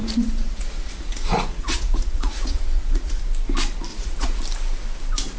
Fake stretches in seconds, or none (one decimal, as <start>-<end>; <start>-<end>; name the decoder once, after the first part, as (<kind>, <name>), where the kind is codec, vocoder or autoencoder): 0.0-3.2 (vocoder, Vocos); 3.9-4.4